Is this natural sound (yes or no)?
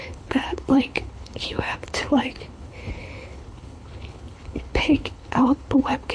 no